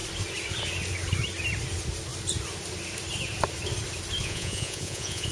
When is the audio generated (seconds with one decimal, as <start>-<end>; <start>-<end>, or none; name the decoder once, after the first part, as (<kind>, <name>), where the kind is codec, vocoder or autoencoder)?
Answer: 4.2-5.3 (vocoder, Vocos)